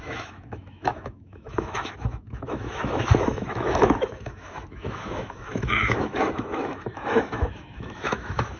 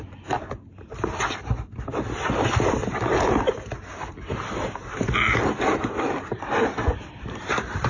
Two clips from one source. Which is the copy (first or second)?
first